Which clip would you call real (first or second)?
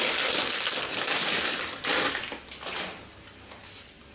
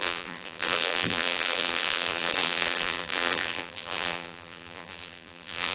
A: first